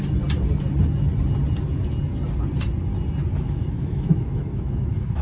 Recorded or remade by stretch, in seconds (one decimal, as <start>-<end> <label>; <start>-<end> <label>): 0.0-3.3 recorded; 3.3-5.2 remade